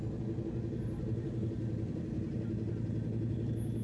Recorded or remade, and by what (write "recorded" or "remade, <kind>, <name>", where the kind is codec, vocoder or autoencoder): recorded